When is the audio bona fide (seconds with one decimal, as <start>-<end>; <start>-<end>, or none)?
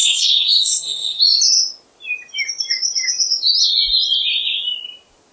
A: 1.2-5.3